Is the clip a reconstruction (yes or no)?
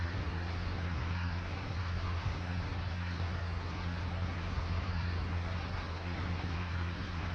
yes